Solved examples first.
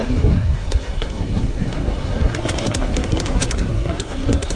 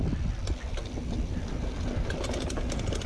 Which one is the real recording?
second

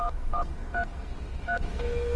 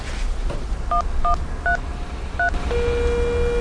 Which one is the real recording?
second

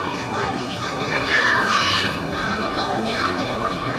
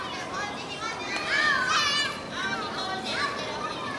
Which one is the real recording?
second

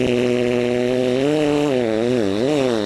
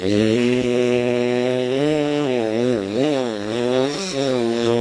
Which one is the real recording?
first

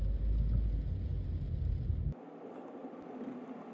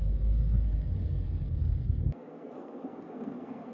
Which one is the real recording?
first